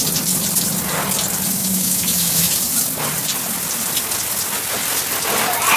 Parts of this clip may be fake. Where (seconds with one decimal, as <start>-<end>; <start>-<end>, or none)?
1.6-2.5